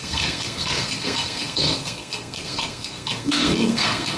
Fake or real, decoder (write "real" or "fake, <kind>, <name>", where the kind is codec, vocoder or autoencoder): fake, codec, SNAC